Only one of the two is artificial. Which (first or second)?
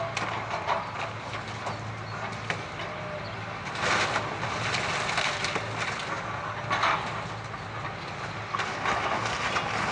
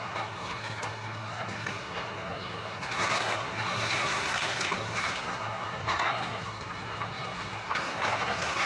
second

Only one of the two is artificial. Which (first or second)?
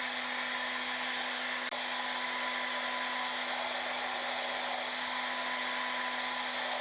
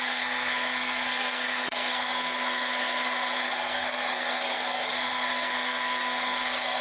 second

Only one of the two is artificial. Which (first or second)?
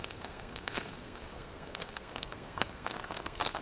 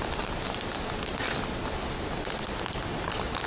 first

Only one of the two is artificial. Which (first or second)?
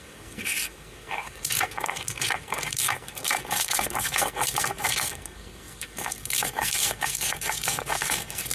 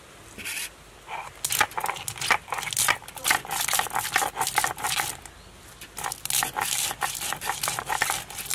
first